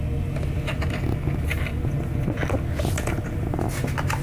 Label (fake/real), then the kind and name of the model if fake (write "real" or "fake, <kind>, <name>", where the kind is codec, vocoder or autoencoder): real